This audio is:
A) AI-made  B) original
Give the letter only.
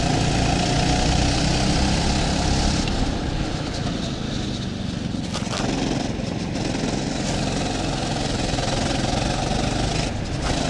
B